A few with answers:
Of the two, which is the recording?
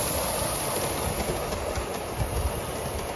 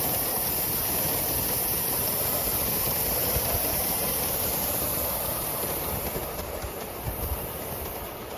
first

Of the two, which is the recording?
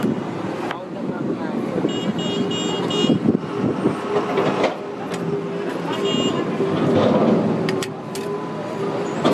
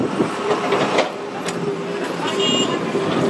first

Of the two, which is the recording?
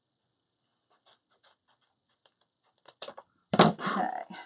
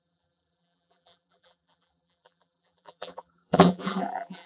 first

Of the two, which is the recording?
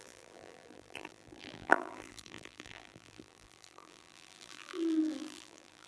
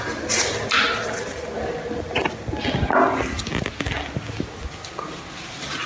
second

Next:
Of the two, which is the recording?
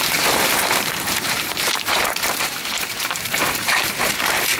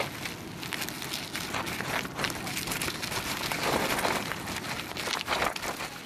second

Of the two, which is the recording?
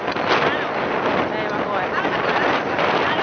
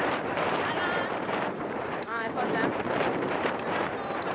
first